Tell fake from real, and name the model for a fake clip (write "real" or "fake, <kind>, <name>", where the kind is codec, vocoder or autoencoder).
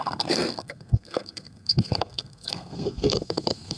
fake, codec, SNAC